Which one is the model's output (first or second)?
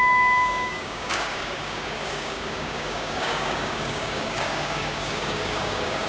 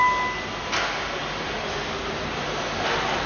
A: first